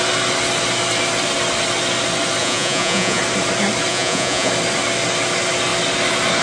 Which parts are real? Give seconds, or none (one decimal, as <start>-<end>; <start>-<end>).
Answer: 0.0-2.4; 3.2-3.9; 4.5-6.4